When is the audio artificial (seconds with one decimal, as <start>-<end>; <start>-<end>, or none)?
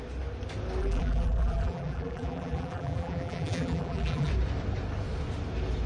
0.8-4.3